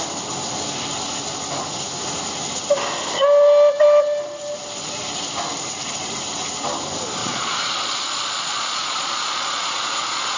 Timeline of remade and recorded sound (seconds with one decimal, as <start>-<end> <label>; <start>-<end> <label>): 0.0-7.2 recorded; 7.2-10.4 remade